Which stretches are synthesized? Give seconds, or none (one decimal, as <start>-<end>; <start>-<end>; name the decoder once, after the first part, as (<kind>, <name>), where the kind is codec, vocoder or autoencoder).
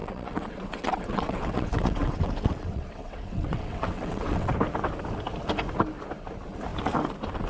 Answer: 0.0-4.5 (vocoder, WaveNeXt)